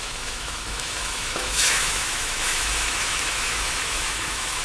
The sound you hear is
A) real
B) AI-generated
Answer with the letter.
B